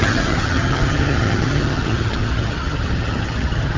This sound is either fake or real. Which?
fake